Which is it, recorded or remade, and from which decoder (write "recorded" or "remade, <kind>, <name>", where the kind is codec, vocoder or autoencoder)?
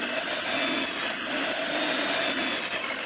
recorded